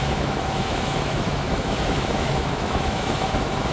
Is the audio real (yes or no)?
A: no